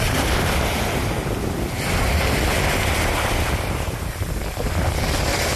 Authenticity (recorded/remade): recorded